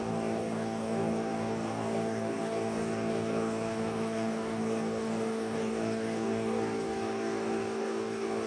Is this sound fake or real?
fake